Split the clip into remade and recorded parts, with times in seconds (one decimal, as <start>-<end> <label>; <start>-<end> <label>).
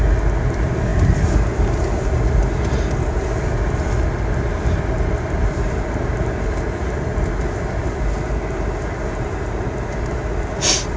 0.0-11.0 recorded